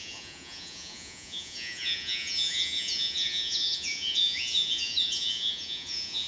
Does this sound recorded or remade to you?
remade